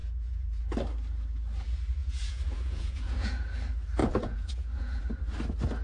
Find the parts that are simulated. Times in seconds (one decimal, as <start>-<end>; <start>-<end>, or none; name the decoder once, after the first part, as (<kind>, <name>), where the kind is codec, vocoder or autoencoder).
0.0-0.6 (vocoder, Vocos); 2.0-3.4; 4.0-5.0